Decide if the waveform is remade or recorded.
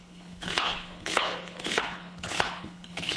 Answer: remade